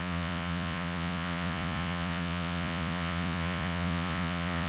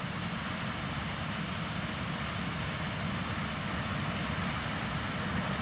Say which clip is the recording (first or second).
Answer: second